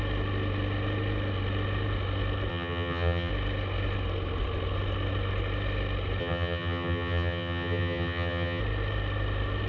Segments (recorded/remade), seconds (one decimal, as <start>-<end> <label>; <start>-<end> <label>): 0.0-2.5 recorded; 2.5-3.3 remade; 3.3-6.2 recorded; 6.2-8.6 remade; 8.6-9.7 recorded